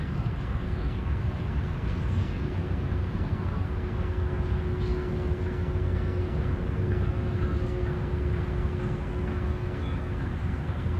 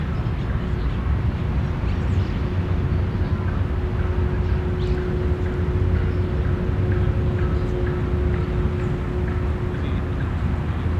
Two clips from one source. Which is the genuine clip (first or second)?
second